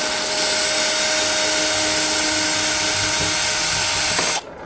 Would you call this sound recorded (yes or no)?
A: yes